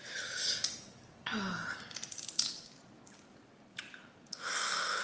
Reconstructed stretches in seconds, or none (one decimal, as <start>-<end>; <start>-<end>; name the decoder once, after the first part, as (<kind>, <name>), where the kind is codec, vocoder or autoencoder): 4.3-5.0 (codec, SNAC)